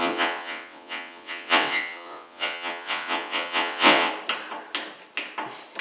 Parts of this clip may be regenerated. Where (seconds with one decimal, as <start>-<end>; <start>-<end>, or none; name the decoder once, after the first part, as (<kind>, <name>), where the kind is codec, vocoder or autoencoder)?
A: 0.0-4.1 (vocoder, WaveNeXt)